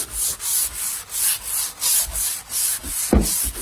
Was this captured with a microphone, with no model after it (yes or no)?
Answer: yes